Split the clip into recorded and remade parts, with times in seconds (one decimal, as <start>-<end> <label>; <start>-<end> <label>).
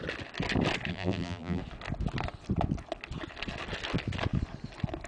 0.0-0.9 recorded; 0.9-1.6 remade; 1.6-5.1 recorded